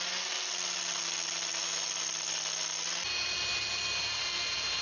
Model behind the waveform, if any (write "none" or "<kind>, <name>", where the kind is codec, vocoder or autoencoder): none